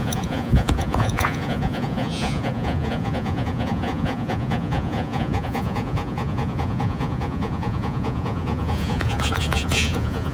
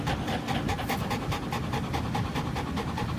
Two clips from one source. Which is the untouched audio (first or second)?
second